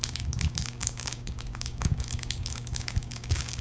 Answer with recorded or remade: remade